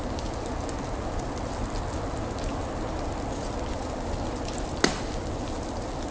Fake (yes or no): no